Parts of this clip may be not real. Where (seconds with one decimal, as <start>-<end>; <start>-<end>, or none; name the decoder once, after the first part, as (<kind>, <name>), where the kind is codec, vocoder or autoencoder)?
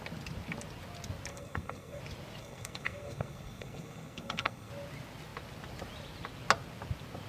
1.3-2.0 (codec, SNAC); 2.4-4.7